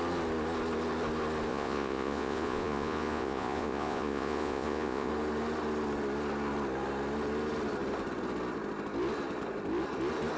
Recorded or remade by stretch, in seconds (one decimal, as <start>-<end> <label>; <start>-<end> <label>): 0.0-1.5 recorded; 1.5-5.1 remade; 5.1-10.4 recorded